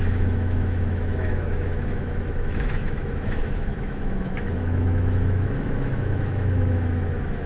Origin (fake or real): fake